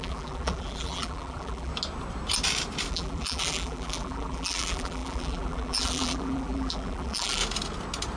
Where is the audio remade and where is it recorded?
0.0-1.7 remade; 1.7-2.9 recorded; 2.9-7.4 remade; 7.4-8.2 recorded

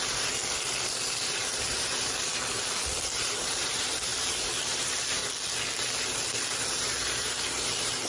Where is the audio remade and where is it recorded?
0.0-0.4 remade; 0.4-1.7 recorded; 1.7-5.2 remade; 5.2-6.0 recorded; 6.0-8.1 remade